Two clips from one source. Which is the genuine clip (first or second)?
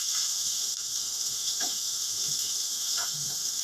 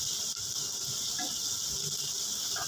second